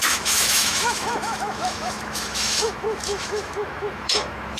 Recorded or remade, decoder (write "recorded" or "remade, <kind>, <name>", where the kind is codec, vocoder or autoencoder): remade, autoencoder, DAC-VAE